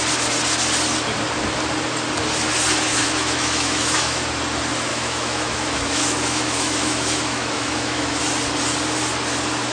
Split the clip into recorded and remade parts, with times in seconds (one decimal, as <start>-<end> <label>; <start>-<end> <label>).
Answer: 0.0-2.9 recorded; 2.9-4.2 remade; 4.2-4.9 recorded; 4.9-8.2 remade; 8.2-9.7 recorded